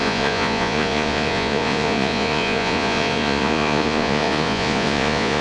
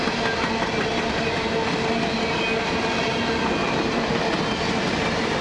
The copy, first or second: first